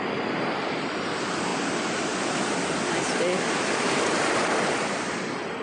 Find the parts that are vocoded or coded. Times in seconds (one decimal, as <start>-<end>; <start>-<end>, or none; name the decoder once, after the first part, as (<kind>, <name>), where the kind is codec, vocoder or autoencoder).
none